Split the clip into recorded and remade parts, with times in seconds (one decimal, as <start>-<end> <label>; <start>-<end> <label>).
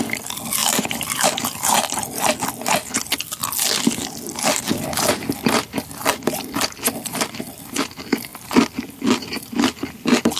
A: 0.0-0.6 recorded; 0.6-1.3 remade; 1.3-10.4 recorded